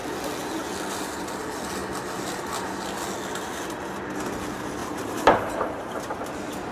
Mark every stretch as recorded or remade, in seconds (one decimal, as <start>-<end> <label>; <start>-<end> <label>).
0.0-4.8 recorded; 4.8-6.0 remade; 6.0-6.7 recorded